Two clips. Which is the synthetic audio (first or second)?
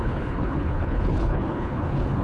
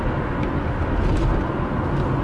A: first